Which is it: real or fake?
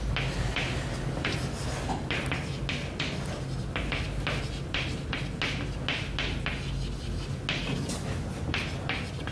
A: real